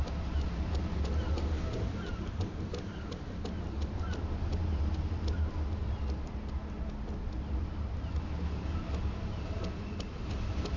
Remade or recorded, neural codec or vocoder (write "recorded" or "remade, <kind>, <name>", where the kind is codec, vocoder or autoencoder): recorded